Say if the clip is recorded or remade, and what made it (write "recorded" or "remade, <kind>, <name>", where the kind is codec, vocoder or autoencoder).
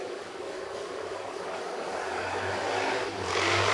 remade, codec, DAC